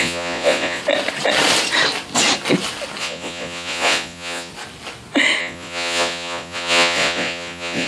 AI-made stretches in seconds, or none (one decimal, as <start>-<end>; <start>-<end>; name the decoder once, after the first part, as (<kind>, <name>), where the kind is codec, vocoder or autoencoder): 0.0-0.8 (vocoder, Vocos); 3.0-4.5; 5.4-7.9